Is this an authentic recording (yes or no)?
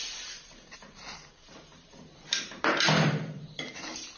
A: no